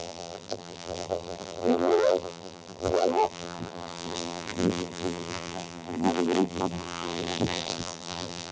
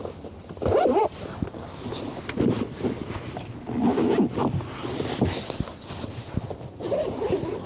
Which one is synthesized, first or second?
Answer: first